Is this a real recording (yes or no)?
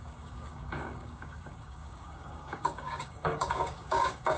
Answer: no